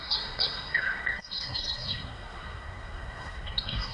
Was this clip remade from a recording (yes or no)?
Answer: yes